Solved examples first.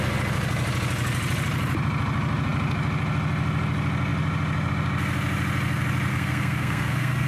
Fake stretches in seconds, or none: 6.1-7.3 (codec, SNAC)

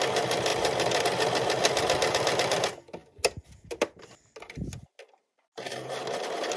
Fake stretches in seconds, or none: none